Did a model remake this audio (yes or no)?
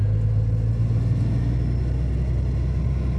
no